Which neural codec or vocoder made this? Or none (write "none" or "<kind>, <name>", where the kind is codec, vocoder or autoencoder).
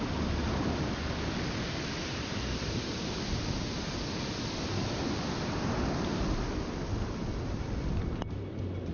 none